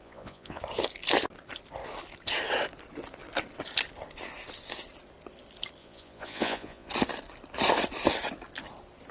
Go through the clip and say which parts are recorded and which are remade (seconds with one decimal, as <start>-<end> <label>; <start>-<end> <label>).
0.0-0.6 remade; 0.6-5.8 recorded; 5.8-6.9 remade; 6.9-9.1 recorded